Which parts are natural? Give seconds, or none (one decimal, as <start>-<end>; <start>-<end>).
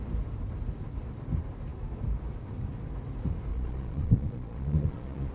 0.0-3.5